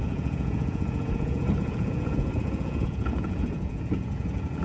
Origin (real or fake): fake